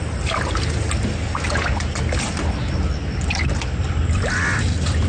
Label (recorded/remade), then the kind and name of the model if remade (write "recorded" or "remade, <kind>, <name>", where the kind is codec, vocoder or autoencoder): recorded